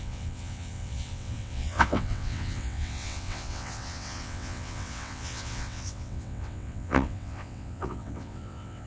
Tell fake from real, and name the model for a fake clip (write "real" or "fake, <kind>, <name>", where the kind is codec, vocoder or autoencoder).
fake, vocoder, WaveNeXt